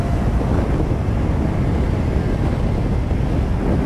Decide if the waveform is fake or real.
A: real